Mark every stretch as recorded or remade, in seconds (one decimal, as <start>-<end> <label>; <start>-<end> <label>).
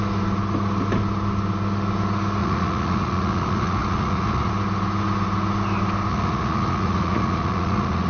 0.0-2.4 recorded; 2.4-4.5 remade; 4.5-6.1 recorded; 6.1-8.1 remade